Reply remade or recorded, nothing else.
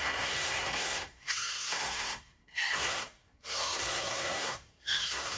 remade